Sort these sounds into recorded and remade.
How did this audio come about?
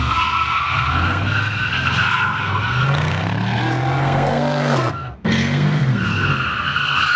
remade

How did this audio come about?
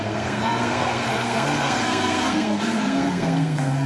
remade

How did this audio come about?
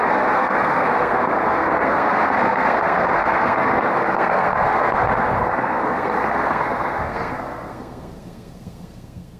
remade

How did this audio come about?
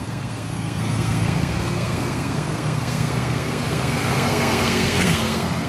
remade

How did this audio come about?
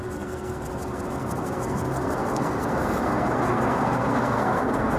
remade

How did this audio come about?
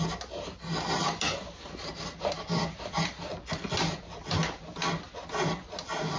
recorded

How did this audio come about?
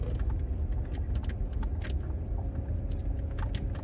recorded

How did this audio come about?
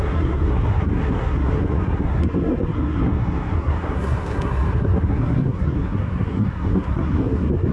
remade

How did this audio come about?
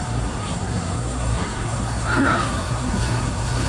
remade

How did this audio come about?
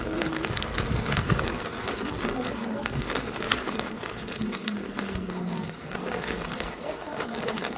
remade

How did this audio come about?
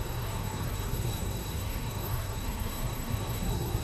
remade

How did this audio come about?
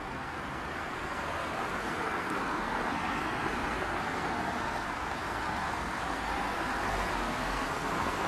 remade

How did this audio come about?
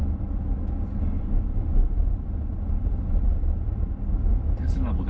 recorded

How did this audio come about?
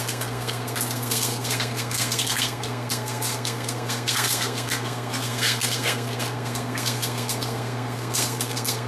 remade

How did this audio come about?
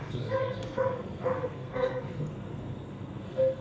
remade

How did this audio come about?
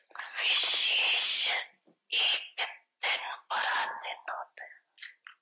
recorded